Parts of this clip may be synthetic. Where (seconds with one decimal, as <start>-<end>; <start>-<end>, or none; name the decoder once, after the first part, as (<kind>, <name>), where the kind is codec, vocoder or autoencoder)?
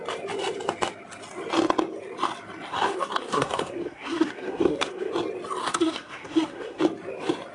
2.7-5.1 (codec, SNAC); 5.6-6.8